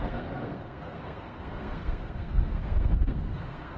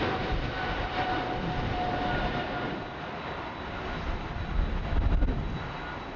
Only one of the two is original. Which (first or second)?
second